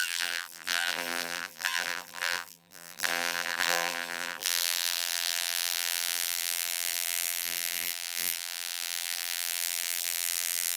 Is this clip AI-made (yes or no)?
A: yes